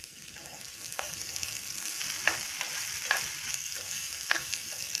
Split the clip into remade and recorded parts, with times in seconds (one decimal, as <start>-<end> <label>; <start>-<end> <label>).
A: 0.0-2.0 remade; 2.0-3.5 recorded; 3.5-5.0 remade